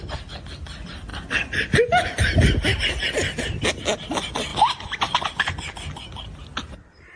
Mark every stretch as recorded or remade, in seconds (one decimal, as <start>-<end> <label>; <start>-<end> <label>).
0.0-7.2 recorded